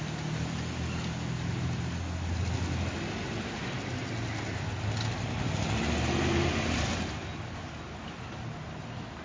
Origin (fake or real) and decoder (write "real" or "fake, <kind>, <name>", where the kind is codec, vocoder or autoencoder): real